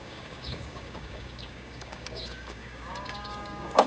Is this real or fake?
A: fake